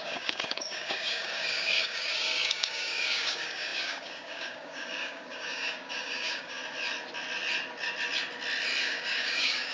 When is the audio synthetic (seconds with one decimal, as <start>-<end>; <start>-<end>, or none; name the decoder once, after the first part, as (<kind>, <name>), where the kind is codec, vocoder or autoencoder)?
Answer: 0.0-6.6 (codec, DAC); 8.8-9.7